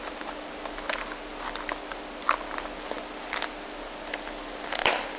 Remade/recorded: recorded